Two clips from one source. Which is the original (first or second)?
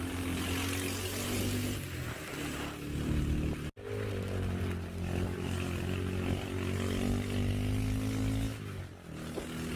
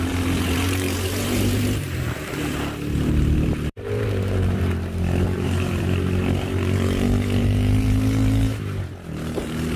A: first